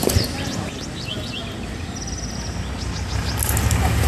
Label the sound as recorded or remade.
recorded